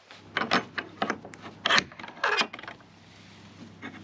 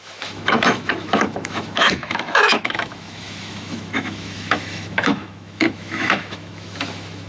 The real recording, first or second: first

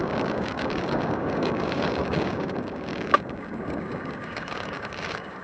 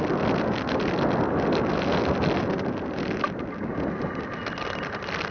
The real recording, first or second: second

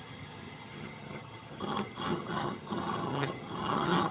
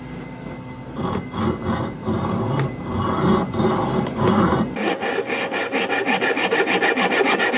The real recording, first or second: second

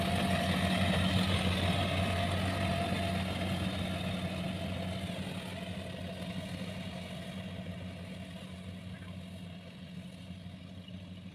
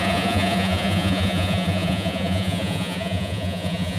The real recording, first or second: first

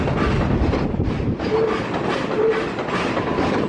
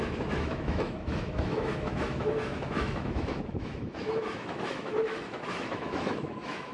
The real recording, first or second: first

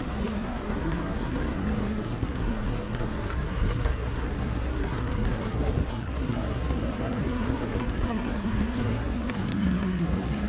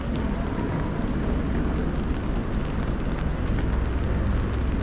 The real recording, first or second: second